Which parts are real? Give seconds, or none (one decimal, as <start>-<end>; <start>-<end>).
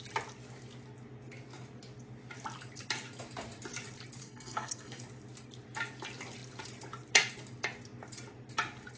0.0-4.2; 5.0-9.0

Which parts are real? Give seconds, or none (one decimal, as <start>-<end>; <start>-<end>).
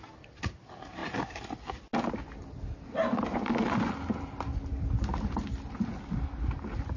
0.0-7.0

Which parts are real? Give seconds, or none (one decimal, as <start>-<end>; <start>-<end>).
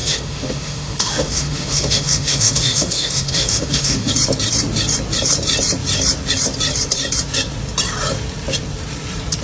4.1-9.4